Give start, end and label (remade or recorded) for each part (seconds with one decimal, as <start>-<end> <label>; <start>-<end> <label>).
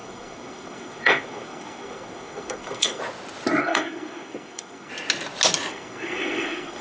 0.0-3.0 remade; 3.0-3.6 recorded; 3.6-4.9 remade; 4.9-5.7 recorded; 5.7-6.8 remade